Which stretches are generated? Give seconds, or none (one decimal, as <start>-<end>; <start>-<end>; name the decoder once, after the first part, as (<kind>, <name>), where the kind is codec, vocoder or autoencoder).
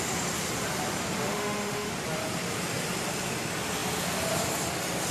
1.2-1.9 (autoencoder, DAC-VAE)